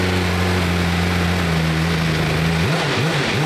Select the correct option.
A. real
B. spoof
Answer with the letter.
A